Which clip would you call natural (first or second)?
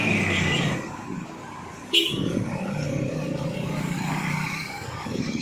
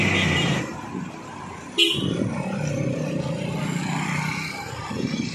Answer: second